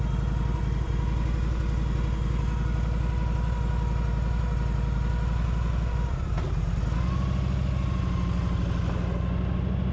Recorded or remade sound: recorded